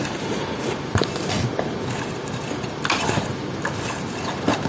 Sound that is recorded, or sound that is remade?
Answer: recorded